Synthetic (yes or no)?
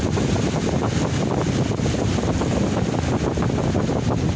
no